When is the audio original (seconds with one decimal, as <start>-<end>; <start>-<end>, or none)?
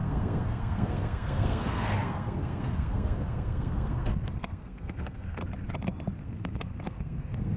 5.4-6.2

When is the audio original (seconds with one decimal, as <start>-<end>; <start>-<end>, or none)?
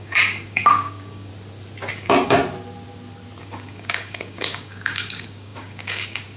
1.3-1.9; 2.4-3.4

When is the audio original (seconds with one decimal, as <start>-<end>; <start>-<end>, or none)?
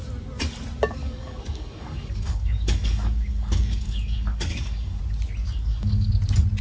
0.0-1.0; 5.0-5.4; 6.1-6.6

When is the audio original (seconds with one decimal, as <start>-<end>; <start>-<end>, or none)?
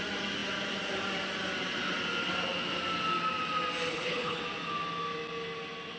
0.0-3.9; 4.4-6.0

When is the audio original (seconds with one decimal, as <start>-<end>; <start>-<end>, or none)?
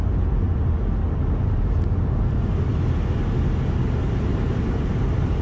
0.0-4.0; 4.8-5.4